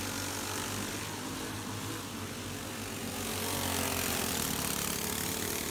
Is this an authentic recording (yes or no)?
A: yes